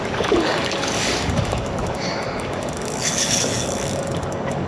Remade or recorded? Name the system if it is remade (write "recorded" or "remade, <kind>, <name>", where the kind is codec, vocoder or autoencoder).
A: remade, codec, DAC